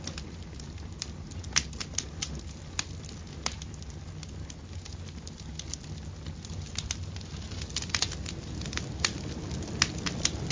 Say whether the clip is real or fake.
real